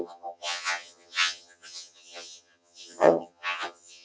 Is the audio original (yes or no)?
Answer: no